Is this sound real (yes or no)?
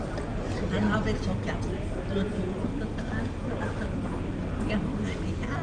yes